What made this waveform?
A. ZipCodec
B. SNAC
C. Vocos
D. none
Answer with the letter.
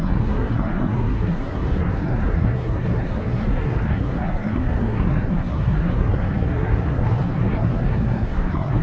B